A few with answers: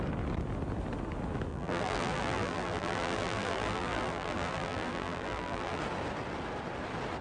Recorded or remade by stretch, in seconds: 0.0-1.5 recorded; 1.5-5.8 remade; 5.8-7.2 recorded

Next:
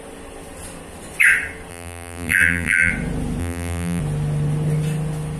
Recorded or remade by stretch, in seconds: 0.0-1.7 recorded; 1.7-2.9 remade; 2.9-3.4 recorded; 3.4-4.0 remade; 4.0-5.4 recorded